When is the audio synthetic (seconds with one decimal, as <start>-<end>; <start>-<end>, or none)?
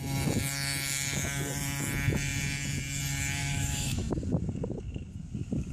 3.4-4.1